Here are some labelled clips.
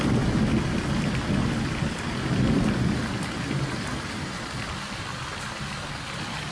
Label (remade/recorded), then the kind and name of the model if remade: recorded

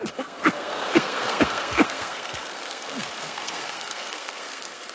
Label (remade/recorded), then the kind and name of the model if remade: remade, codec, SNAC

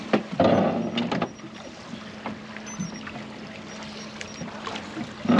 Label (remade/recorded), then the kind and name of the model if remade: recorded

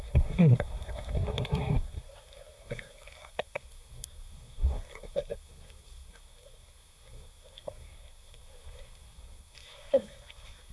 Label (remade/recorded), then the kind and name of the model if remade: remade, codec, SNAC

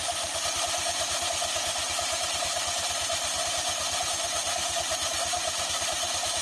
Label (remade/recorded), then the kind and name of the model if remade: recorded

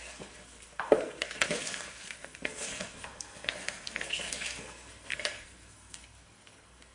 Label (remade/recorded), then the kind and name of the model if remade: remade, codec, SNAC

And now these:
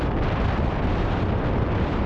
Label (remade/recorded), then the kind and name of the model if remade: recorded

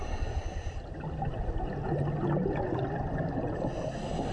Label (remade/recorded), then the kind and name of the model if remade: recorded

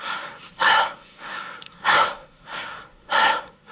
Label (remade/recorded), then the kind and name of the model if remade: remade, codec, SNAC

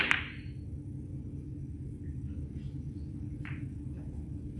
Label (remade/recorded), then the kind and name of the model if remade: recorded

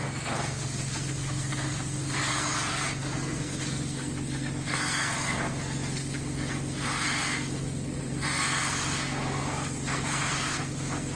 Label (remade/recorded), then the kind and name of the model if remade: remade, codec, SNAC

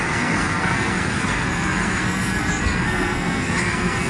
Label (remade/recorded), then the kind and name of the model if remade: remade, codec, SNAC